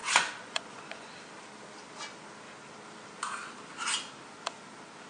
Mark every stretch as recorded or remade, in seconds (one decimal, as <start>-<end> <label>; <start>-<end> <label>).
0.0-1.1 remade; 1.1-5.1 recorded